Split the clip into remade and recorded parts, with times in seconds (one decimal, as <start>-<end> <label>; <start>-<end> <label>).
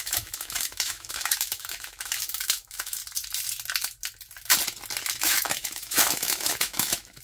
0.0-3.0 remade; 3.0-5.1 recorded; 5.1-7.2 remade